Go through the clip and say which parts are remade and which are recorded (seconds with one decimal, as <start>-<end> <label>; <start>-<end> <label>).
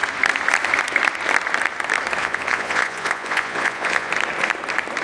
0.0-2.2 recorded; 2.2-4.1 remade; 4.1-5.0 recorded